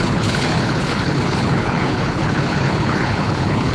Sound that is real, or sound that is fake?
fake